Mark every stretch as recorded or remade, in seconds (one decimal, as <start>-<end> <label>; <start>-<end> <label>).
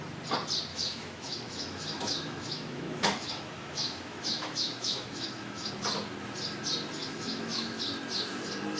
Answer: 0.0-0.7 recorded; 0.7-5.7 remade; 5.7-7.0 recorded; 7.0-7.8 remade; 7.8-8.8 recorded